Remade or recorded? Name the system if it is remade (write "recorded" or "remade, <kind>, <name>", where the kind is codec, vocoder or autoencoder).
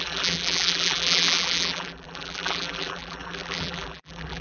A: remade, vocoder, BigVGAN v2